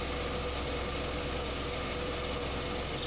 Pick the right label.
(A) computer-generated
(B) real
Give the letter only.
B